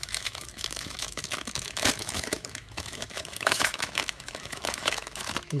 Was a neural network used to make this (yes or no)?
yes